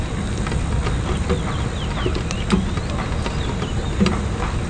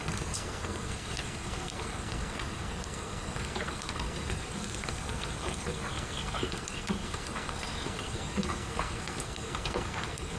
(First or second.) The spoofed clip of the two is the second